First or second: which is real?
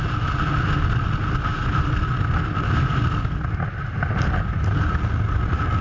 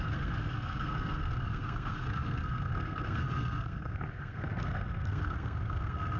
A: first